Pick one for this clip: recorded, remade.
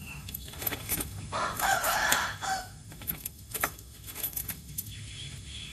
remade